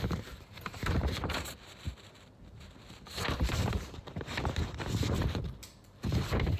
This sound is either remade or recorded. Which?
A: remade